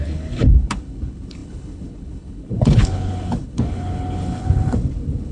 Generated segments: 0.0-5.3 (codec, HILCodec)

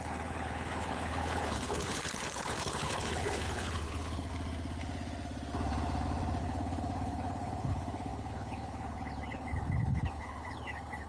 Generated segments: 0.0-4.3 (codec, HILCodec); 6.4-11.1

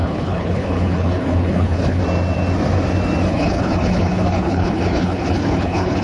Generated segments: 0.0-2.0 (codec, HILCodec); 3.3-6.0

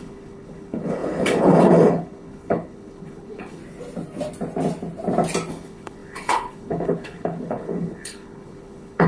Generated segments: 0.0-3.6 (codec, HILCodec); 5.5-9.1

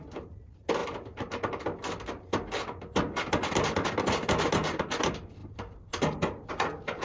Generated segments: none

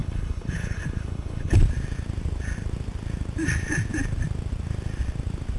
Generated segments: 0.0-1.6 (codec, HILCodec)

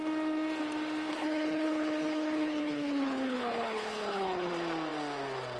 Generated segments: 1.1-4.5 (codec, HILCodec)